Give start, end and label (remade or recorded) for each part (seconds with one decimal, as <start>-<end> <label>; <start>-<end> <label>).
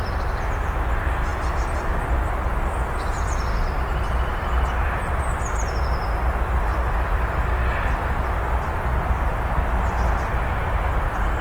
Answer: 0.0-11.4 recorded